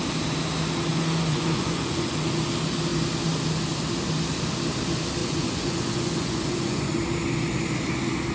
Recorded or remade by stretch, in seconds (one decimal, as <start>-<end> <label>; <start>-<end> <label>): 0.0-0.9 recorded; 0.9-2.4 remade; 2.4-5.2 recorded; 5.2-6.9 remade; 6.9-8.3 recorded